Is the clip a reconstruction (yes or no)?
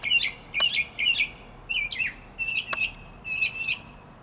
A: no